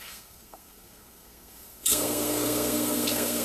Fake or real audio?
fake